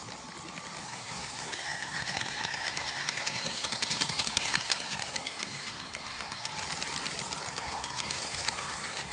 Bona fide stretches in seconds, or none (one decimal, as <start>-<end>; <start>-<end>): 0.0-0.8; 6.5-7.5